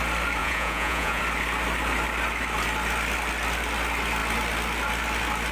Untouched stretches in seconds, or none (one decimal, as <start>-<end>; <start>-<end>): 0.0-0.4; 1.2-5.5